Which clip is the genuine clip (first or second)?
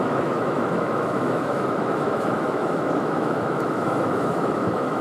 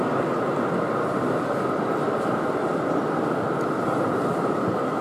second